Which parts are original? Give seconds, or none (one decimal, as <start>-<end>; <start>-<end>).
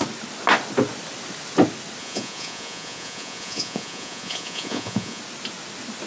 0.0-2.0; 5.2-6.1